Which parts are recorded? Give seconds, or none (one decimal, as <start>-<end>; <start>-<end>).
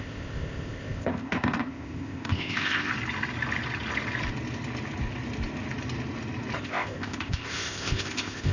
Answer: 2.9-6.6